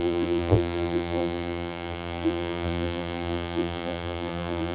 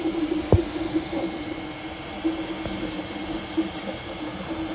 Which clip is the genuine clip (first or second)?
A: second